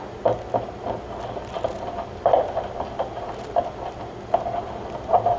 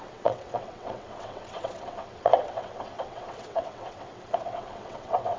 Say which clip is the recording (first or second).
first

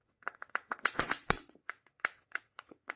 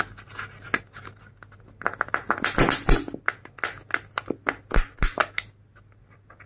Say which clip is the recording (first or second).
second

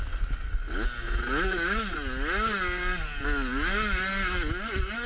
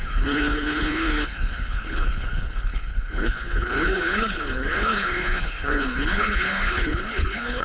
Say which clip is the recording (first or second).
first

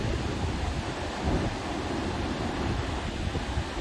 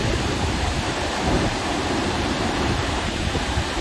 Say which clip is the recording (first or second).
first